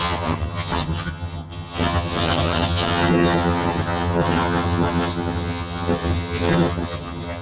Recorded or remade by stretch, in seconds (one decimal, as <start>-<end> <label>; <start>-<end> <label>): 0.0-7.4 remade